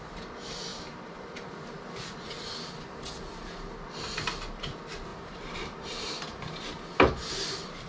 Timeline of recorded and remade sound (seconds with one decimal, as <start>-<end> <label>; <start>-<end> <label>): 0.0-0.7 recorded; 0.7-1.5 remade; 1.5-5.1 recorded; 5.1-6.6 remade; 6.6-7.9 recorded